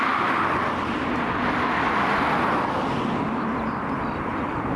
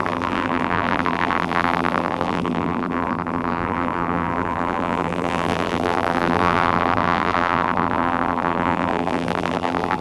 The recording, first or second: first